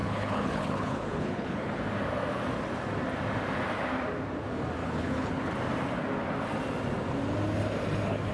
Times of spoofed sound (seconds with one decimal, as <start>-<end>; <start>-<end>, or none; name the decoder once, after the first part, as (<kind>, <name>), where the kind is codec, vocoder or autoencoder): 0.0-1.8 (codec, HILCodec); 4.8-5.5